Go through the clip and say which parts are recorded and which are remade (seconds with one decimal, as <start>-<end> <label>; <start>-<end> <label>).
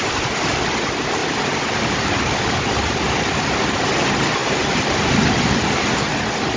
0.0-6.6 recorded